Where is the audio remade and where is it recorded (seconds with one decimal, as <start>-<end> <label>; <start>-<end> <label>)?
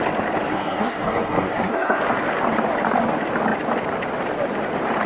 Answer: 0.0-0.5 recorded; 0.5-2.0 remade; 2.0-5.1 recorded